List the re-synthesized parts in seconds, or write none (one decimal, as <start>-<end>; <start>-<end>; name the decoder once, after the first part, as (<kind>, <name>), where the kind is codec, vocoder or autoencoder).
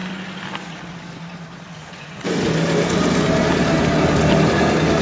1.8-2.3 (vocoder, Vocos)